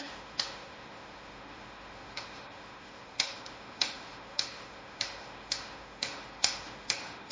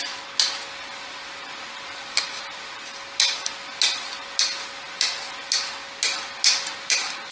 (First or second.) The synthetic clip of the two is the first